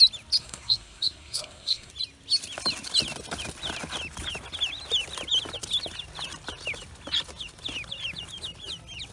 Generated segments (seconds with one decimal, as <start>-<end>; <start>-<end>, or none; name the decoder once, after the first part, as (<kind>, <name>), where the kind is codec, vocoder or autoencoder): 0.4-1.9 (codec, SNAC)